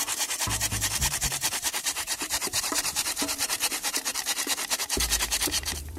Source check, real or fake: fake